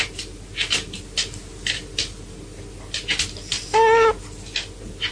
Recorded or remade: recorded